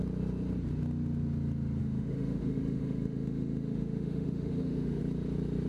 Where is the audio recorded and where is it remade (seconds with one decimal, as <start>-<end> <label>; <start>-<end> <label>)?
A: 0.0-1.8 recorded; 1.8-5.0 remade; 5.0-5.7 recorded